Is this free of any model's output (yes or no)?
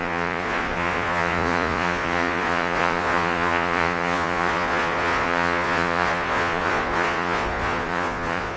no